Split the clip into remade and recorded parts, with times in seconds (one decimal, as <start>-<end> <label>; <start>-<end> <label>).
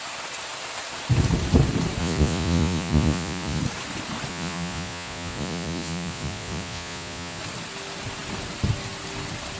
0.0-2.0 recorded; 2.0-3.6 remade; 3.6-4.3 recorded; 4.3-7.4 remade; 7.4-9.6 recorded